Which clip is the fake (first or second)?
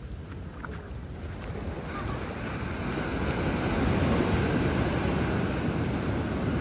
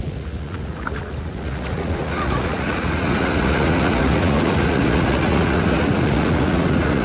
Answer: second